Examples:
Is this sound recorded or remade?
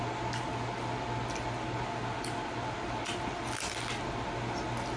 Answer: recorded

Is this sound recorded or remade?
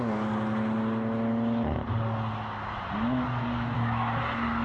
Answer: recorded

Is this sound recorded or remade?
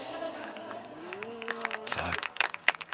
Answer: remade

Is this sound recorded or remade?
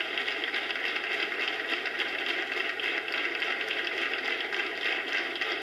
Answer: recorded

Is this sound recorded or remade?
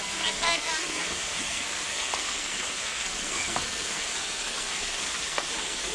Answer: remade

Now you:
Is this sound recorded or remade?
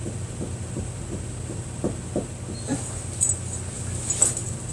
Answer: recorded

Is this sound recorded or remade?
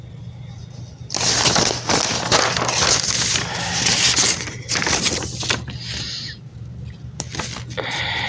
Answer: recorded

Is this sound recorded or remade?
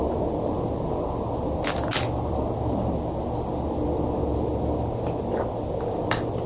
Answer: recorded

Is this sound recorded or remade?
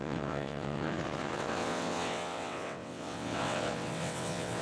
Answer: remade